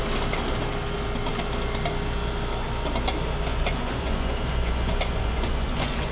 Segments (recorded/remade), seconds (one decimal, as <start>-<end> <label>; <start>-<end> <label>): 0.0-3.5 recorded; 3.5-6.1 remade